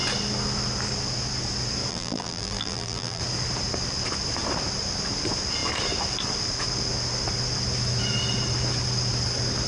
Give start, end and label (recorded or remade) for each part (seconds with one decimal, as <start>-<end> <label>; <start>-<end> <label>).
0.0-1.9 recorded; 1.9-3.2 remade; 3.2-9.7 recorded